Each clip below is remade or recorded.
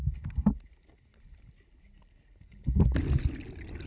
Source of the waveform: recorded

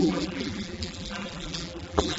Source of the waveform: remade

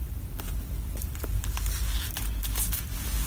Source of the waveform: recorded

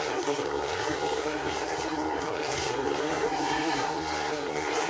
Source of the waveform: remade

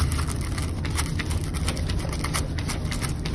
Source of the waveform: recorded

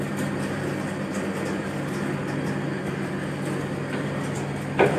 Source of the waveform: recorded